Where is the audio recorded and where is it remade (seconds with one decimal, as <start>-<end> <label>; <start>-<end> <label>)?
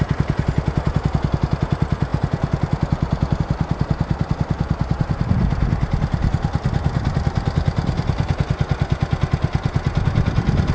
0.0-10.7 recorded